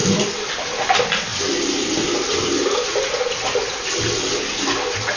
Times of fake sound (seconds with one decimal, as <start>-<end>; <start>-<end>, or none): none